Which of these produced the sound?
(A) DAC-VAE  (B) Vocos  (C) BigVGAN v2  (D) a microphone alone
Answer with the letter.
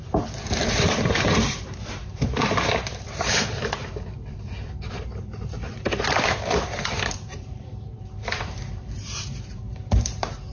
C